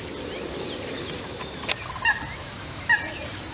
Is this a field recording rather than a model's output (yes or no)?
yes